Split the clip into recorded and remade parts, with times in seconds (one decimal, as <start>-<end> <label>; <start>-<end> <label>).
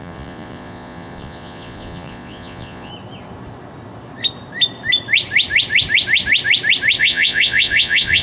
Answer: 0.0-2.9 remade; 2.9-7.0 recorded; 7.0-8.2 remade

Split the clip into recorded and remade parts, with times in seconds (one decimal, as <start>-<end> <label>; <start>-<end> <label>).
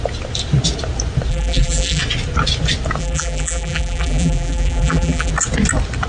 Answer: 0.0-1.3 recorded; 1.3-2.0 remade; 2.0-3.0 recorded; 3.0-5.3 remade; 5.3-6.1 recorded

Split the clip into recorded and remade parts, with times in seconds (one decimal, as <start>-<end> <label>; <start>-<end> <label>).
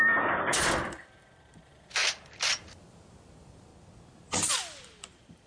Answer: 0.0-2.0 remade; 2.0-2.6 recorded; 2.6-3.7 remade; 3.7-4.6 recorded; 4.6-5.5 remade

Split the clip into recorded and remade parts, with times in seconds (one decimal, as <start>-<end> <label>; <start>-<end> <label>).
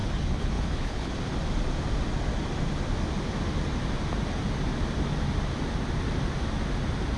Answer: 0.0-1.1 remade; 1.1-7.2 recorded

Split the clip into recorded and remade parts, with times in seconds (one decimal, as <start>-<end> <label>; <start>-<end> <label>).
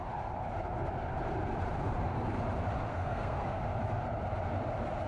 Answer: 0.0-2.9 recorded; 2.9-3.6 remade; 3.6-5.1 recorded